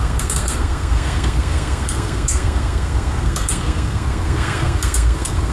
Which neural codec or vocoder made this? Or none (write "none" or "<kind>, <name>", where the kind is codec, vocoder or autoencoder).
codec, SNAC